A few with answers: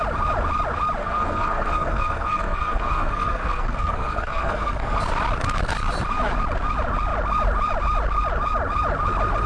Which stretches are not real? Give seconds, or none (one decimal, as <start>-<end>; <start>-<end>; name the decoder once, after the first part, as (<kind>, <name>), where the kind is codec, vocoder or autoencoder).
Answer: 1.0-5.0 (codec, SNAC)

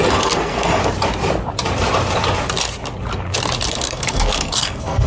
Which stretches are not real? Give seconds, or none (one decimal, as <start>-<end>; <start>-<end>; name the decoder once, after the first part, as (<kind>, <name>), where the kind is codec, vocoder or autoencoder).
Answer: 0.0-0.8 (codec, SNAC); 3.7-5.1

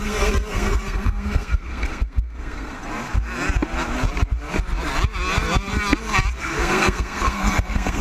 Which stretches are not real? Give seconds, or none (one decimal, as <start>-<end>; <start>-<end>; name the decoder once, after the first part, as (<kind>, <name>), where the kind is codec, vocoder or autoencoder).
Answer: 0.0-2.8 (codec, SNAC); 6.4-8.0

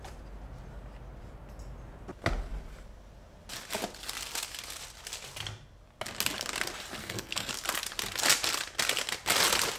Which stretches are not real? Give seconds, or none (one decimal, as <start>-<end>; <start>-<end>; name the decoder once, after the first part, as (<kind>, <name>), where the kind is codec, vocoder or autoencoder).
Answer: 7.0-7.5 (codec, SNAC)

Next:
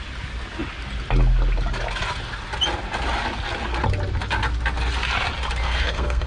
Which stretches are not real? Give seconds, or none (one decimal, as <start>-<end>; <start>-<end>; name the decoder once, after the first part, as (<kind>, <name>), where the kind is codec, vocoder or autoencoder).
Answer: 5.6-6.3 (codec, SNAC)

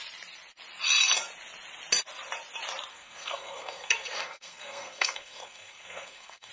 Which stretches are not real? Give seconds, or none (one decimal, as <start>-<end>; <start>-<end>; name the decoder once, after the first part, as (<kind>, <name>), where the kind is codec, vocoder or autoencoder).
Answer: 2.9-6.5 (codec, SNAC)